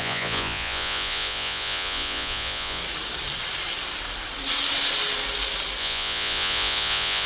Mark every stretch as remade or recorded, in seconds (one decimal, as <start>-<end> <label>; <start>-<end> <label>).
0.0-2.8 remade; 2.8-5.8 recorded; 5.8-7.3 remade